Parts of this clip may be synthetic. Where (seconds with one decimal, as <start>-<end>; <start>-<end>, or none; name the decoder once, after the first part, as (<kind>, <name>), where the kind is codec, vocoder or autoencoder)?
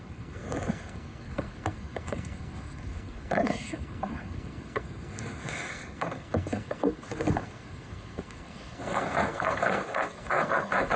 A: 0.0-11.0 (codec, SNAC)